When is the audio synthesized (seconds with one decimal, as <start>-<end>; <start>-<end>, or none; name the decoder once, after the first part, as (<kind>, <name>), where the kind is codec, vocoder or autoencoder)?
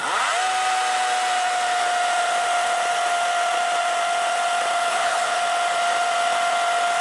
4.9-5.4 (codec, HILCodec)